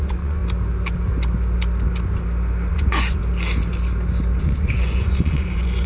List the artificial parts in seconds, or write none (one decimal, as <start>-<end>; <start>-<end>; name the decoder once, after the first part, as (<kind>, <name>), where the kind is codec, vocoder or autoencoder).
0.0-0.4 (vocoder, Vocos); 2.7-3.2; 4.4-5.9